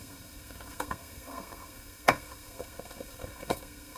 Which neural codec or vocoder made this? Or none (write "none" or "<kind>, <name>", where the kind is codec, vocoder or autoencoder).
codec, SNAC